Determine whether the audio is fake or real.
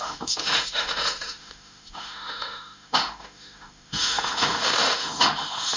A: fake